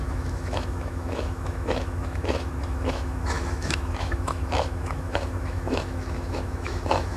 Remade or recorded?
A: remade